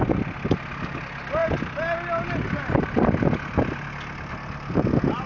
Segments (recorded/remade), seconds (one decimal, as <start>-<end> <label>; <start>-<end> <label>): 0.0-5.3 recorded